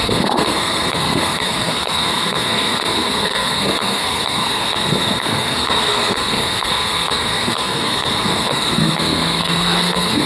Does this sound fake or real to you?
fake